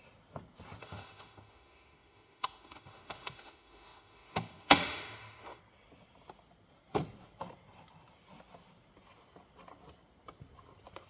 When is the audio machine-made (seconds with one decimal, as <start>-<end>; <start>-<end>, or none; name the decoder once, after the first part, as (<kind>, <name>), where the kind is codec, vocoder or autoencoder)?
0.8-5.6 (autoencoder, DAC-VAE)